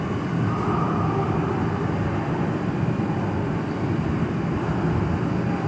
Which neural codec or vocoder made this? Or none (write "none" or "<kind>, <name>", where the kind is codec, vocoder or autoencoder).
none